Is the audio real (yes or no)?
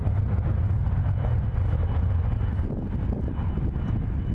yes